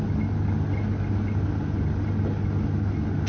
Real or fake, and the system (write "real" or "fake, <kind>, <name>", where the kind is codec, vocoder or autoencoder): real